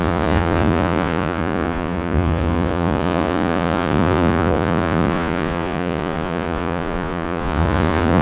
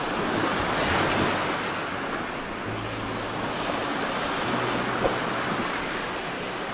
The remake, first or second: first